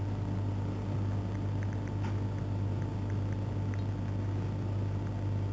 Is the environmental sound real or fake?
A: real